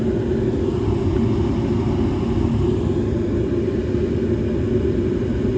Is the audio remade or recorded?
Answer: recorded